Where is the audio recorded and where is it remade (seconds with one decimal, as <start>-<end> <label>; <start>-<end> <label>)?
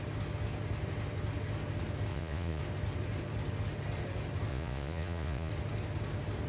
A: 0.0-2.1 recorded; 2.1-2.6 remade; 2.6-4.5 recorded; 4.5-5.5 remade; 5.5-6.5 recorded